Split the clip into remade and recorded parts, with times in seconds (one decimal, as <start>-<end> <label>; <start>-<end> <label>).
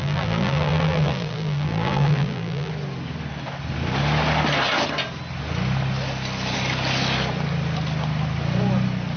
0.0-2.7 remade; 2.7-9.2 recorded